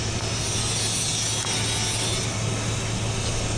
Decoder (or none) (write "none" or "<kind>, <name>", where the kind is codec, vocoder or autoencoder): none